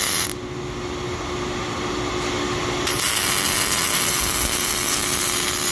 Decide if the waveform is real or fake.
real